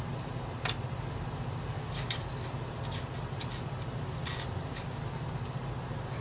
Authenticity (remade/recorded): recorded